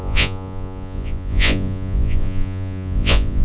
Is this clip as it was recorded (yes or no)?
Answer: no